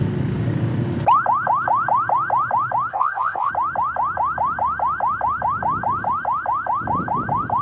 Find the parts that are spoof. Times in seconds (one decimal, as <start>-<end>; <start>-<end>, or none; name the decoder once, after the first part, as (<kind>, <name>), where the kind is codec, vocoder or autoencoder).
2.9-3.5 (codec, ZipCodec)